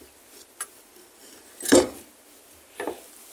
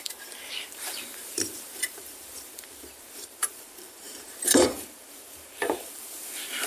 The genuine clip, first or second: first